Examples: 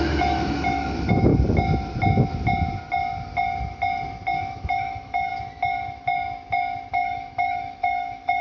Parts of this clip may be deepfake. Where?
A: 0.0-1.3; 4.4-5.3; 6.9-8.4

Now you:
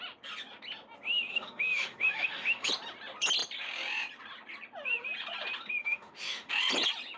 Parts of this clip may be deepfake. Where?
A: 1.3-2.7; 5.8-6.5

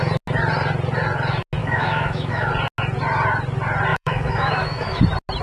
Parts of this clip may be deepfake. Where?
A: 1.6-2.5; 3.9-5.0

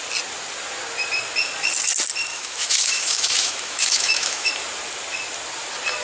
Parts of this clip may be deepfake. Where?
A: 2.3-4.5

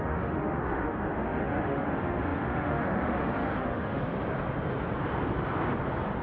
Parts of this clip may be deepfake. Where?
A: 0.0-4.0

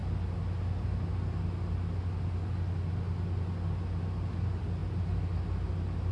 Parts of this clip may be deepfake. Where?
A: none

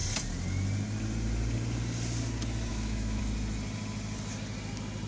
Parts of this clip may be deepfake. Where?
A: 2.7-3.2